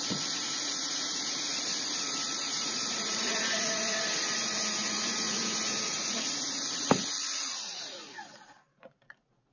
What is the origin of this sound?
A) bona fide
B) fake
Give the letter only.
B